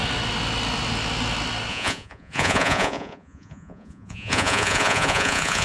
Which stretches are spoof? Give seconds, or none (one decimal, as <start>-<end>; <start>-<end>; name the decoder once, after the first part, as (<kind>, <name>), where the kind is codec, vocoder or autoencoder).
1.7-5.6 (vocoder, Vocos)